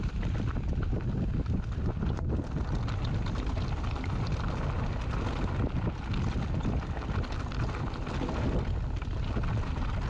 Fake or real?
real